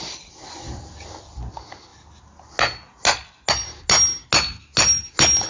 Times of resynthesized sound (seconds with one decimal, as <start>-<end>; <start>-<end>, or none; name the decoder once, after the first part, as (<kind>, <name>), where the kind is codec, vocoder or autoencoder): none